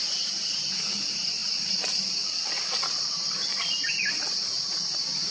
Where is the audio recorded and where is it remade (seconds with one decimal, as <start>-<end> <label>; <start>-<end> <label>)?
0.0-1.4 recorded; 1.4-4.6 remade; 4.6-5.3 recorded